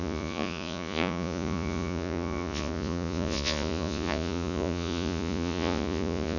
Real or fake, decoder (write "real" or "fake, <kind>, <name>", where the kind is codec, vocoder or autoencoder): fake, vocoder, Vocos